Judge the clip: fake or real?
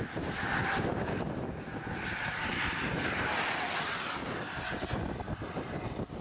real